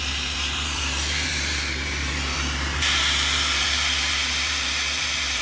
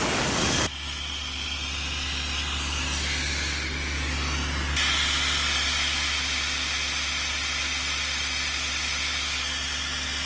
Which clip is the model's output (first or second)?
first